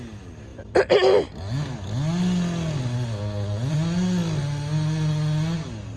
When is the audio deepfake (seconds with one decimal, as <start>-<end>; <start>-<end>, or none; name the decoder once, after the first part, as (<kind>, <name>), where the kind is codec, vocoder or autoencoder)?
none